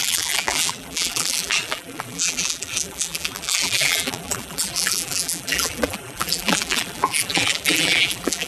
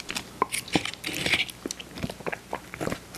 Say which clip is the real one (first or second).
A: second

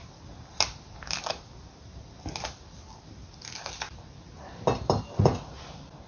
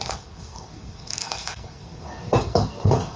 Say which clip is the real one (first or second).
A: first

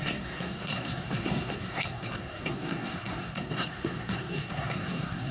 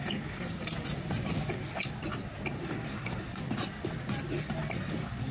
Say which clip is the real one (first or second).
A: second